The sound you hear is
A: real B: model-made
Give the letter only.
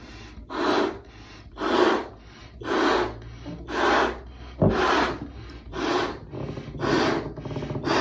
A